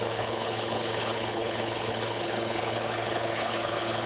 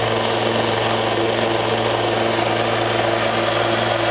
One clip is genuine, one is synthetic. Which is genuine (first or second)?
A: second